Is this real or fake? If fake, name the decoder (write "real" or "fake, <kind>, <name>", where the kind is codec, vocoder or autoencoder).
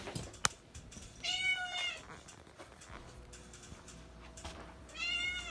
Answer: real